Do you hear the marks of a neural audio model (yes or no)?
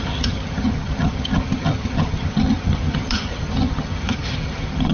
yes